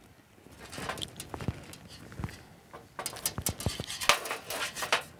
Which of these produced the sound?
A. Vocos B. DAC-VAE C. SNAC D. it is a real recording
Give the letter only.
D